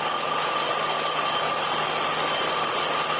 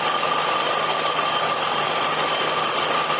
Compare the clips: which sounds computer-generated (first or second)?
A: second